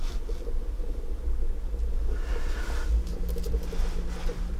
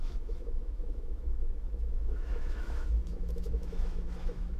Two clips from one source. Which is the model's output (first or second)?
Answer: second